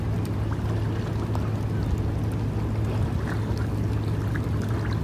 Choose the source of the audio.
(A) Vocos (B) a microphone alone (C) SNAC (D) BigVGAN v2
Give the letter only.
B